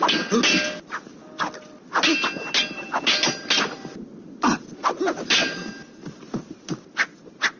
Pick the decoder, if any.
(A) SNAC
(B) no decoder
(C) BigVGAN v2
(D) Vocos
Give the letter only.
B